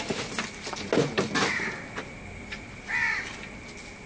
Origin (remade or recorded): recorded